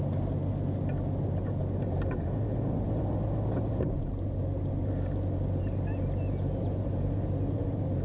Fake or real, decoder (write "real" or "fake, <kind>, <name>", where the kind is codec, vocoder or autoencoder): real